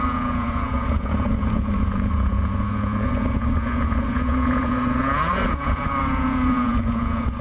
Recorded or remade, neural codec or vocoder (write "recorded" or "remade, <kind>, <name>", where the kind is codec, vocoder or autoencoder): remade, vocoder, Vocos